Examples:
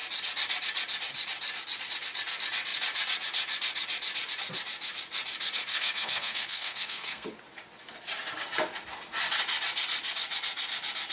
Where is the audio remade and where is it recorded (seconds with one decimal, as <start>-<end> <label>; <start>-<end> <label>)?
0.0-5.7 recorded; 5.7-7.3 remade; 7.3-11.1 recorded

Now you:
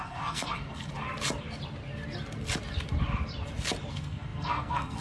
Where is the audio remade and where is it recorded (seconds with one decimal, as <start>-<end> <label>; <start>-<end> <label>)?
0.0-0.9 remade; 0.9-3.9 recorded; 3.9-5.0 remade

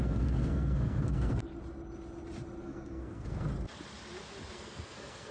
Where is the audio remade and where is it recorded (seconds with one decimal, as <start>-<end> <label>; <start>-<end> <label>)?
0.0-1.4 remade; 1.4-2.6 recorded; 2.6-3.5 remade; 3.5-4.5 recorded; 4.5-5.3 remade